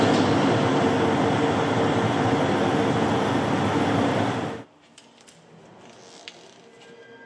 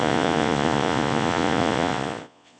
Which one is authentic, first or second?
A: first